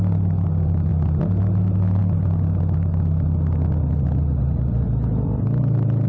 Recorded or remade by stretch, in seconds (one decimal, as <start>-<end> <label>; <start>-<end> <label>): 0.0-6.1 recorded

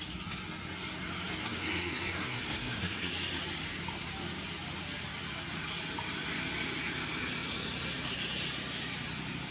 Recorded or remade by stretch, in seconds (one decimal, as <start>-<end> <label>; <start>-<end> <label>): 0.0-1.4 recorded; 1.4-3.1 remade; 3.1-9.5 recorded

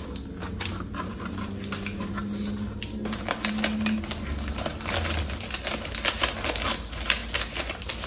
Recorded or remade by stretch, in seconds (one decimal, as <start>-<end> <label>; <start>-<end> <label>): 0.0-4.7 recorded; 4.7-6.5 remade; 6.5-7.2 recorded; 7.2-8.1 remade

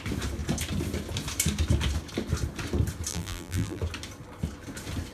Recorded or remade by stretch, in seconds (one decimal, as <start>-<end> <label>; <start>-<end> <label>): 0.0-3.1 recorded; 3.1-3.8 remade; 3.8-5.1 recorded

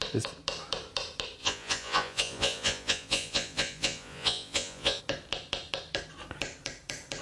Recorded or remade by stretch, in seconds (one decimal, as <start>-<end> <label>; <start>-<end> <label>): 0.0-1.4 recorded; 1.4-5.0 remade; 5.0-7.2 recorded